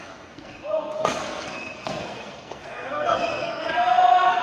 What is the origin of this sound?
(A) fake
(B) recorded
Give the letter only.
A